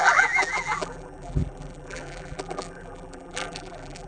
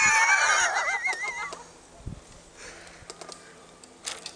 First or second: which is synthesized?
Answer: first